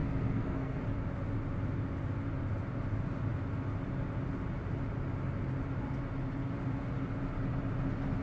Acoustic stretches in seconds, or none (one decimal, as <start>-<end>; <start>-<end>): 0.8-8.2